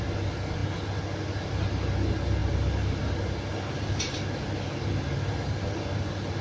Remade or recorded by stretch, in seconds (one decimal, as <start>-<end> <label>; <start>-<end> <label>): 0.0-6.4 recorded